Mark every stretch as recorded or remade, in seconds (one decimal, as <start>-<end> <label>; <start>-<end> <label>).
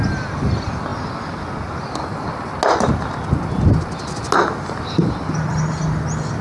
0.0-6.4 recorded